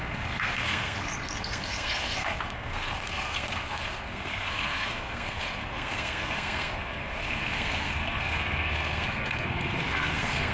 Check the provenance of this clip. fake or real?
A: fake